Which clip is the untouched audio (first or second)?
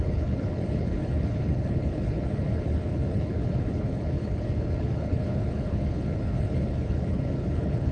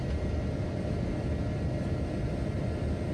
second